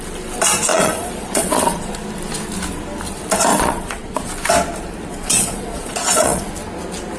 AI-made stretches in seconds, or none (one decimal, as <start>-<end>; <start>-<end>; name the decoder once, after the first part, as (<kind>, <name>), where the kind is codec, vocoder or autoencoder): 0.7-1.9 (vocoder, Vocos); 3.5-4.3; 5.1-6.5